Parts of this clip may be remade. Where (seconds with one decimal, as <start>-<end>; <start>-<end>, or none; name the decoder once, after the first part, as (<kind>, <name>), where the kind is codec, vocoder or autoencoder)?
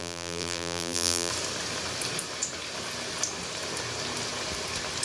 0.0-1.3 (vocoder, BigVGAN v2)